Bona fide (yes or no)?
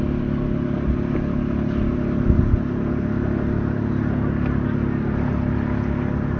yes